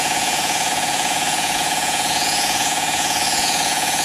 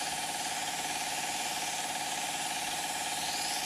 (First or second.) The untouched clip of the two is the second